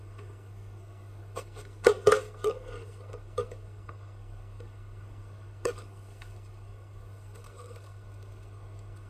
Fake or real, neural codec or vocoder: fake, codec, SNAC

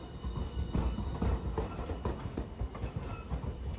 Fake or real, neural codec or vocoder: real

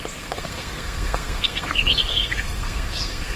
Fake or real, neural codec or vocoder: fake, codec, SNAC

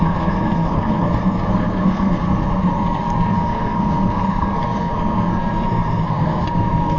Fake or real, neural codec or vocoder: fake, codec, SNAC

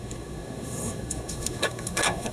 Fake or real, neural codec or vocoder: fake, codec, SNAC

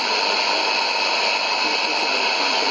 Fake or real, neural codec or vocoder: real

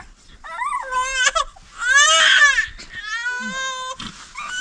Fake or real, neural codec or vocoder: real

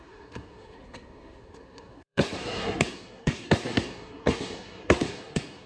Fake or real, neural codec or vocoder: fake, codec, SNAC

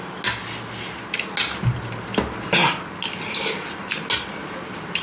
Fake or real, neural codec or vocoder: real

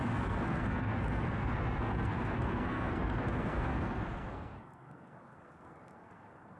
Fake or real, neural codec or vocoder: fake, codec, SNAC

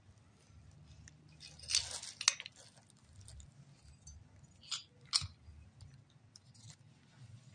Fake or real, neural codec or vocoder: real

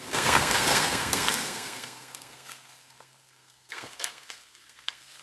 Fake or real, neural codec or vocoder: fake, codec, SNAC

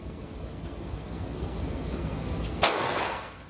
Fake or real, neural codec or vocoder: fake, codec, SNAC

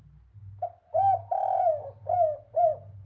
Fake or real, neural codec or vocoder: real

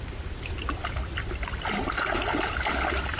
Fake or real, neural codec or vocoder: real